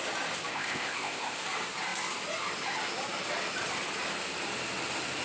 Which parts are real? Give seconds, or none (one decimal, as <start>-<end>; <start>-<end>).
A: 0.0-0.5; 1.4-5.2